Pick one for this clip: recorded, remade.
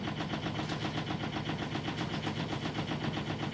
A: recorded